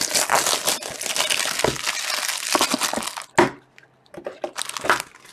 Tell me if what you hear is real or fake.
real